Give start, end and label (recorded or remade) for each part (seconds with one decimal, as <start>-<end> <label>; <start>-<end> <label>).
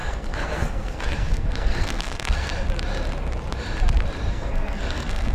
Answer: 0.0-2.5 remade; 2.5-4.3 recorded; 4.3-5.3 remade